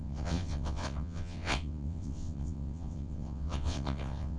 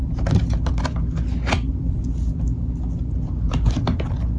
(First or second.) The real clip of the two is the second